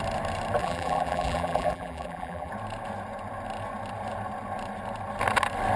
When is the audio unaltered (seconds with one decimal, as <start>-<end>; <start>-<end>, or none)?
0.0-0.6; 2.5-5.8